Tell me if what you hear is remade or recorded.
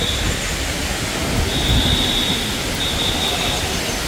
recorded